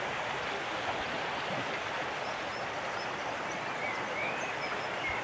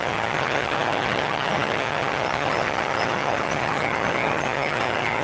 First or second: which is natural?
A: first